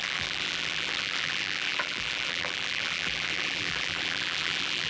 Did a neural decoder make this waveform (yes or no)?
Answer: yes